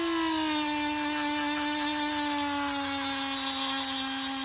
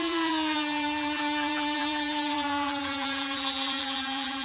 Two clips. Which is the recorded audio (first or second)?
first